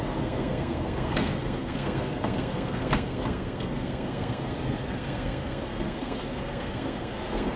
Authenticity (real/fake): fake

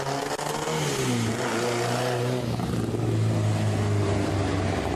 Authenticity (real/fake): real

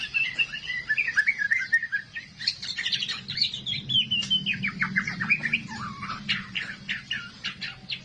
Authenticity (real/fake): real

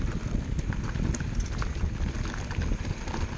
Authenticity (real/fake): real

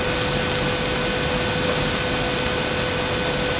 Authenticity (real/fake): real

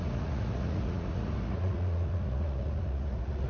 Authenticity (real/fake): fake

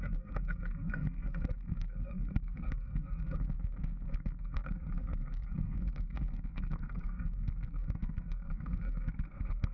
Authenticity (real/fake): fake